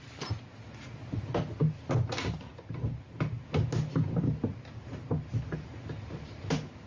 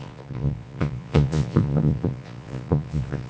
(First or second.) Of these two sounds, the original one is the first